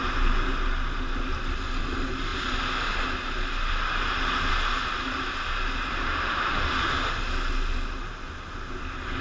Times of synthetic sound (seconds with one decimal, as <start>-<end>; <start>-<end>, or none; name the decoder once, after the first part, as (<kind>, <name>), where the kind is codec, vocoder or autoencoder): 5.9-6.6 (autoencoder, DAC-VAE)